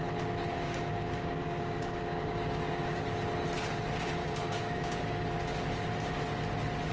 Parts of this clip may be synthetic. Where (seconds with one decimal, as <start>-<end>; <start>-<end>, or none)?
0.5-3.0; 4.2-5.2